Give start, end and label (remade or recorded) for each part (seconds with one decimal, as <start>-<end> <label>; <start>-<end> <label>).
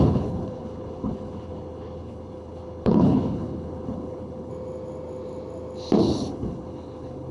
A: 0.0-4.5 remade; 4.5-6.0 recorded; 6.0-7.3 remade